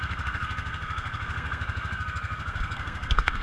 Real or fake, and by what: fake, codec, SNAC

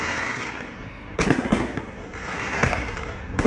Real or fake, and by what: fake, codec, SNAC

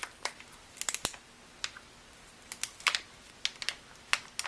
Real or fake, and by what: real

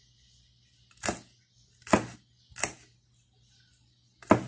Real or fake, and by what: real